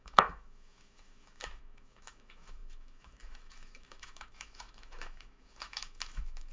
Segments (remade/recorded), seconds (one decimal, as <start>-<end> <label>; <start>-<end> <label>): 0.0-6.5 remade